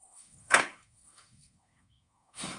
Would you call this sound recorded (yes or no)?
no